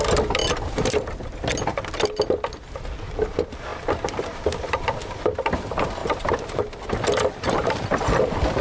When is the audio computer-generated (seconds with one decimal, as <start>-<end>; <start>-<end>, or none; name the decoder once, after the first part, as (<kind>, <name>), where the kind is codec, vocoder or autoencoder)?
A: 0.4-1.9 (vocoder, BigVGAN v2); 3.7-4.8; 6.0-7.8